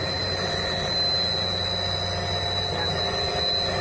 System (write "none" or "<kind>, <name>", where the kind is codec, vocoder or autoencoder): none